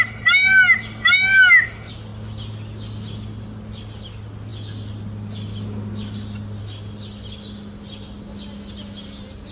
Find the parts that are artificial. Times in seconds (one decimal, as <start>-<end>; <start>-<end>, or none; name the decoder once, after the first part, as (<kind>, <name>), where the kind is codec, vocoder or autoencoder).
none

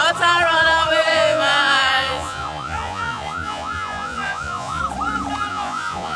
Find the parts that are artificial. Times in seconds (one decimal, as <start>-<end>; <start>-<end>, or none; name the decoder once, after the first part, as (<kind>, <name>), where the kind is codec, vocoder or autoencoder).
1.1-4.8 (vocoder, Vocos); 5.5-6.2

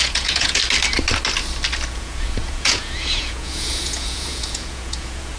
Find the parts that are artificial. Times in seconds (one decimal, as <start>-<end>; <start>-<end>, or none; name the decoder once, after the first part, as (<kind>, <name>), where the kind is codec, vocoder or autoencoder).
0.0-0.6 (vocoder, Vocos); 1.9-5.4

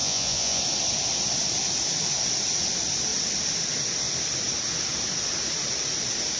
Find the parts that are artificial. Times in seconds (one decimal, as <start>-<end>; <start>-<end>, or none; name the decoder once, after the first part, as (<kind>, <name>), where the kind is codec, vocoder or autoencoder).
0.0-0.6 (vocoder, Vocos)